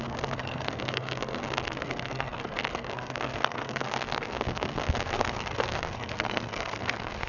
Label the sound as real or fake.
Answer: fake